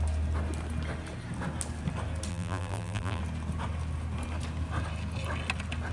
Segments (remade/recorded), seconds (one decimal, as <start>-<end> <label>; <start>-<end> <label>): 0.0-2.3 recorded; 2.3-3.2 remade; 3.2-5.9 recorded